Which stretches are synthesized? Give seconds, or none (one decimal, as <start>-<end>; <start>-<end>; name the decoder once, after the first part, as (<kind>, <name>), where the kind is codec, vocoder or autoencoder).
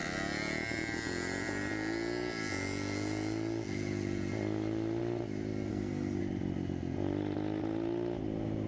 5.7-6.2 (codec, SNAC)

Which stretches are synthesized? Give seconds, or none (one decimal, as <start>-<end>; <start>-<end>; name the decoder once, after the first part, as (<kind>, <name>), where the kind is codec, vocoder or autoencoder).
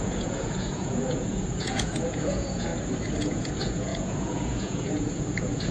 0.0-2.7 (vocoder, Vocos); 3.2-5.7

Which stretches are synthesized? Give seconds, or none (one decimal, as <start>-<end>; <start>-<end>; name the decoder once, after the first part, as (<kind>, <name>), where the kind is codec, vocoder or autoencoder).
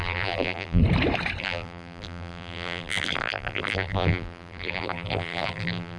0.0-0.8 (vocoder, BigVGAN v2); 1.4-6.0